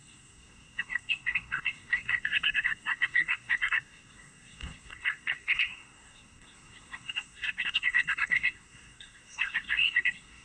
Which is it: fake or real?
fake